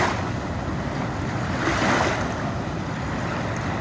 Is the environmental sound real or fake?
real